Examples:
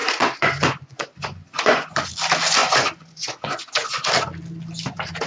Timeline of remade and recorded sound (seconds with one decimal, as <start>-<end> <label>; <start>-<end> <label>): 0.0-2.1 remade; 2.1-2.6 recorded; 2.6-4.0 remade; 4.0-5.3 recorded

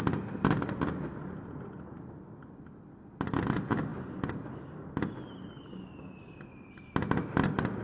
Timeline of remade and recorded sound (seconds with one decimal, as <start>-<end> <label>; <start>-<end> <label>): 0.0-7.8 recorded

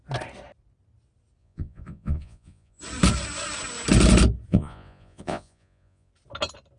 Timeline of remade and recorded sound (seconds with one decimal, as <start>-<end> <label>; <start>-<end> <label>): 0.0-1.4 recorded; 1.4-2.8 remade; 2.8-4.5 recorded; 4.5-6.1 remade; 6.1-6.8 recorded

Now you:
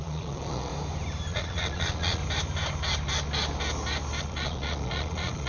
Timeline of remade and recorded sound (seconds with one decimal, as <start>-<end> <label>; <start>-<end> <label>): 0.0-0.7 remade; 0.7-1.3 recorded; 1.3-2.2 remade; 2.2-4.2 recorded; 4.2-5.5 remade

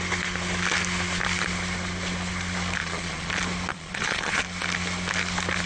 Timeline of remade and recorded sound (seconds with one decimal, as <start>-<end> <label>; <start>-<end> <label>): 0.0-2.8 recorded; 2.8-3.3 remade; 3.3-3.7 recorded; 3.7-4.4 remade; 4.4-5.7 recorded